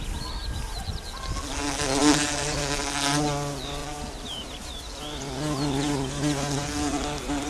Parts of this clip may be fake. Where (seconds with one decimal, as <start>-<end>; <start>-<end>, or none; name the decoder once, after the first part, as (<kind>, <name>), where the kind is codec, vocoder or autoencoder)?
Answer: 2.0-2.6 (vocoder, BigVGAN v2); 3.8-5.0